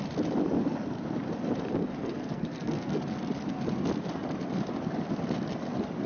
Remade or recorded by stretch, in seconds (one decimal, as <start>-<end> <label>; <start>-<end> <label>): 0.0-1.8 recorded; 1.8-3.0 remade; 3.0-6.1 recorded

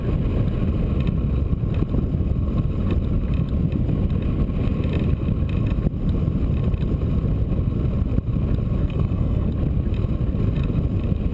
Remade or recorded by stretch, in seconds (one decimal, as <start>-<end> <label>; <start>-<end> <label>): 0.0-8.8 recorded; 8.8-9.5 remade; 9.5-11.3 recorded